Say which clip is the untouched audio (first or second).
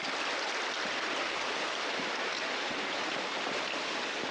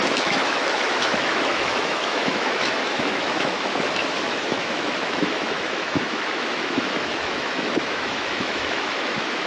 first